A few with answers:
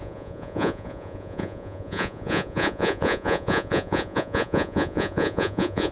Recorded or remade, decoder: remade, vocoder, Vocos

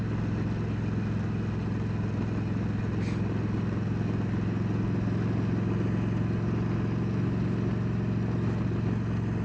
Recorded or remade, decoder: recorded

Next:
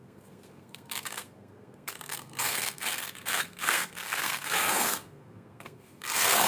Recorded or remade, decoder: remade, codec, SNAC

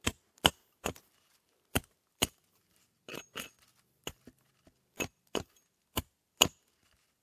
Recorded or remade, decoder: remade, vocoder, BigVGAN v2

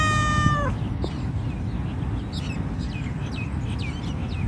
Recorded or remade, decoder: recorded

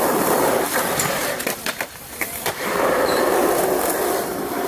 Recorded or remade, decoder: remade, vocoder, BigVGAN v2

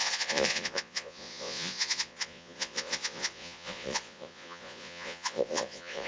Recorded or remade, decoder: remade, vocoder, Vocos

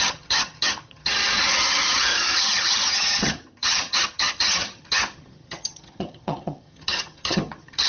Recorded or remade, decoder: remade, vocoder, HiFi-GAN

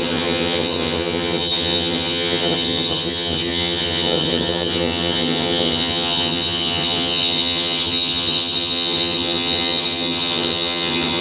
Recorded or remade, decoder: remade, vocoder, HiFi-GAN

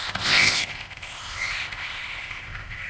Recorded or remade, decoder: remade, codec, ZipCodec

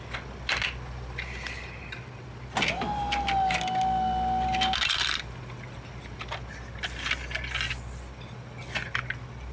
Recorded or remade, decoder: recorded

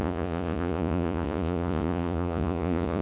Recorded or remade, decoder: remade, vocoder, Vocos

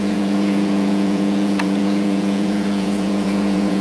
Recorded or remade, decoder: remade, vocoder, Vocos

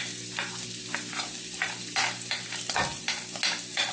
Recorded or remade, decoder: recorded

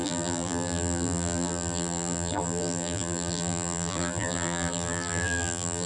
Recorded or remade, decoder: remade, vocoder, BigVGAN v2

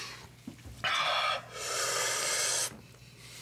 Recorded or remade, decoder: recorded